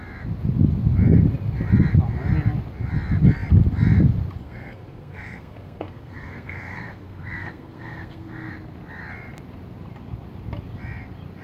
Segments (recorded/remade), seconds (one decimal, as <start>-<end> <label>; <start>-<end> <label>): 0.0-4.4 recorded; 4.4-8.5 remade; 8.5-11.4 recorded